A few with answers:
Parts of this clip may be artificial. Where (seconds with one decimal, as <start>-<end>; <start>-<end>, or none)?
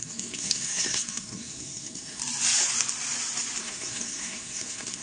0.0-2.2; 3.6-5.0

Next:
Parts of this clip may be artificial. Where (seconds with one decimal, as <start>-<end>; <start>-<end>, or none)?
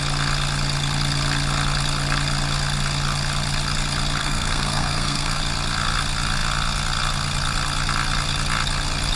4.2-5.4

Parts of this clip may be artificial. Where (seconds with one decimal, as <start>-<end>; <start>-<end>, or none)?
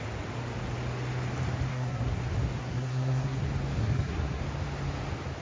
1.7-2.2; 2.6-3.4; 3.8-4.4